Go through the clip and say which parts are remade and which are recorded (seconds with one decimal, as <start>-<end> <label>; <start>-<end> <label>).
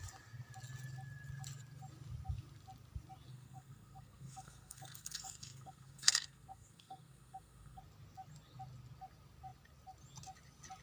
0.0-3.3 recorded; 3.3-7.8 remade; 7.8-10.8 recorded